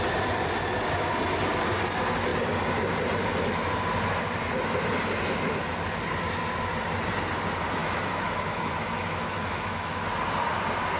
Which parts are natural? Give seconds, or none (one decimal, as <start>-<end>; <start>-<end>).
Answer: 0.0-7.8; 10.1-11.0